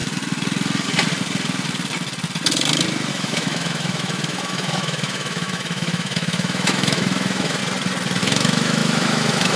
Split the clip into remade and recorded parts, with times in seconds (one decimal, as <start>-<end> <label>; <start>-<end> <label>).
0.0-3.1 recorded; 3.1-7.6 remade; 7.6-8.2 recorded; 8.2-9.6 remade

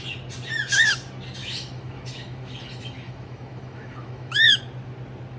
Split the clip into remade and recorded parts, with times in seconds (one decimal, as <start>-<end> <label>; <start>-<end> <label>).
0.0-1.4 recorded; 1.4-4.6 remade; 4.6-5.4 recorded

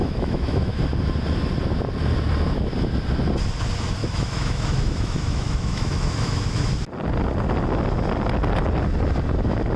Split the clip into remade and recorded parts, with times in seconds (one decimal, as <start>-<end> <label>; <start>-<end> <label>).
0.0-0.8 remade; 0.8-4.0 recorded; 4.0-6.7 remade; 6.7-9.8 recorded